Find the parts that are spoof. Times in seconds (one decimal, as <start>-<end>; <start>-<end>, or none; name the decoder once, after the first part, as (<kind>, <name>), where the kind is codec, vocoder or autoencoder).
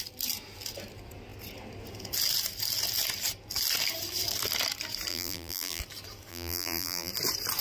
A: 5.1-5.8 (vocoder, BigVGAN v2); 6.3-7.1